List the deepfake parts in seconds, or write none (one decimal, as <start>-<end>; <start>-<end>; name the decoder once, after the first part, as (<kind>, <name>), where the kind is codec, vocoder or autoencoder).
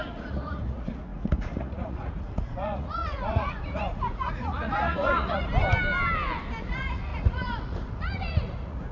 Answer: 0.0-5.5 (vocoder, Vocos); 6.6-8.9